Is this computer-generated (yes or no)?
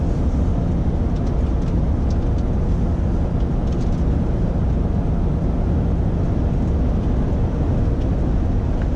no